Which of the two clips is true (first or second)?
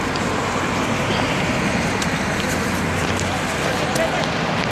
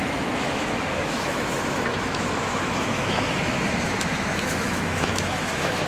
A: first